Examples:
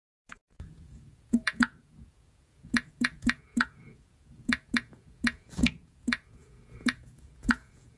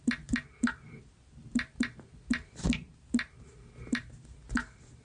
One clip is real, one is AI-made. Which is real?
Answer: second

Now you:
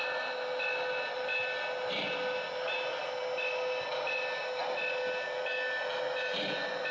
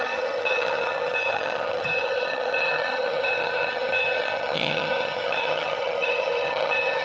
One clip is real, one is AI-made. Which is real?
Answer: first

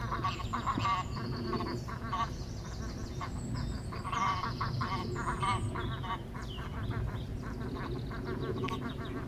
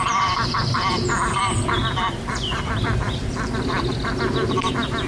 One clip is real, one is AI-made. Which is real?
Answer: first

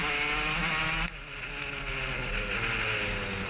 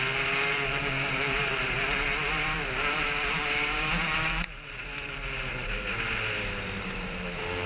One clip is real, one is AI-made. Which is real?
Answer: first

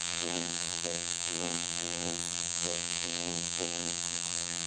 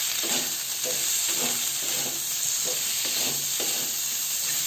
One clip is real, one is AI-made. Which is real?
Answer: second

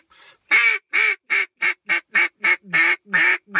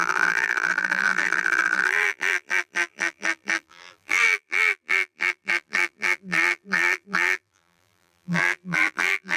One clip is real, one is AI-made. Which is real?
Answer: first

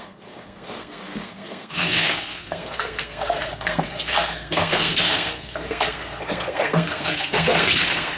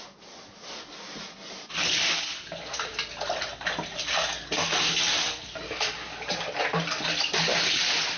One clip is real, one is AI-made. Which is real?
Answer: second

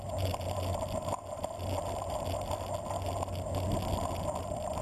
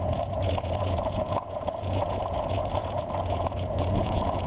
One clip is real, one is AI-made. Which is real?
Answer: first